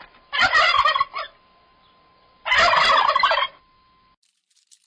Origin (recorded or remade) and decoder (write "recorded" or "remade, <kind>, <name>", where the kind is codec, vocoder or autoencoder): recorded